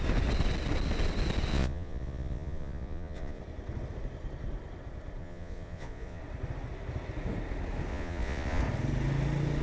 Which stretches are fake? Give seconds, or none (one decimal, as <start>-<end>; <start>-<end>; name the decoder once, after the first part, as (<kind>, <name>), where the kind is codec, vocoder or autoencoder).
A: 1.5-3.4 (vocoder, Vocos); 5.2-6.2; 7.9-8.6